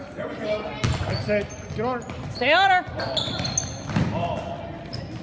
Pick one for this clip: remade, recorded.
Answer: recorded